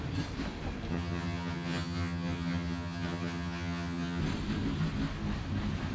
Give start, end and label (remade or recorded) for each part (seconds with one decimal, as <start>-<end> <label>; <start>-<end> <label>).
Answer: 0.0-0.9 recorded; 0.9-4.2 remade; 4.2-5.9 recorded